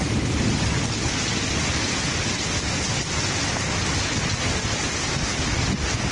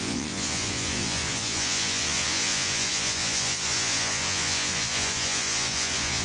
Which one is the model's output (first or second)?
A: second